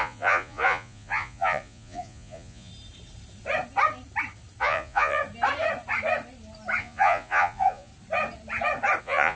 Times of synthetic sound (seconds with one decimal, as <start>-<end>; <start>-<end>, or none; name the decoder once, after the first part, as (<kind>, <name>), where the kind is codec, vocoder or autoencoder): 0.0-2.7 (vocoder, Vocos); 4.6-5.2; 6.8-7.9; 9.0-9.4